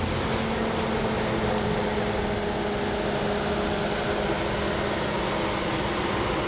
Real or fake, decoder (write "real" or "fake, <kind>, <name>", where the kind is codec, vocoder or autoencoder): real